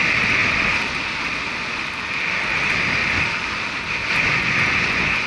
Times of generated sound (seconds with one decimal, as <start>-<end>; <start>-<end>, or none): 4.0-5.3